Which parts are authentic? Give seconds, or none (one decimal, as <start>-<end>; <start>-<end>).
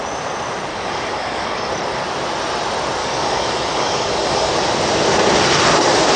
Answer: 0.0-0.7; 1.7-3.0; 4.5-6.2